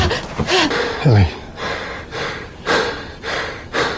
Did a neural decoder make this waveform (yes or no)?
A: no